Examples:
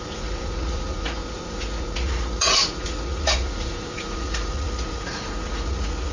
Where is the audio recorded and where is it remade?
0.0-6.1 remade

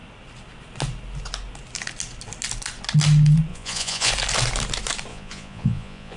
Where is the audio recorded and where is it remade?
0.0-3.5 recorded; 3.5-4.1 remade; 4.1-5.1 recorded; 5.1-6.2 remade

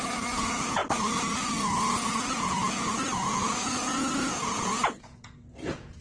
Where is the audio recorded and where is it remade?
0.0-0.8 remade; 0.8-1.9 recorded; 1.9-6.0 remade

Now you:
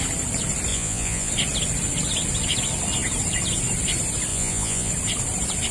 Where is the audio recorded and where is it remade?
0.0-0.7 recorded; 0.7-1.3 remade; 1.3-4.3 recorded; 4.3-4.9 remade; 4.9-5.7 recorded